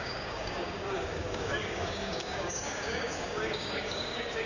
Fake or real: fake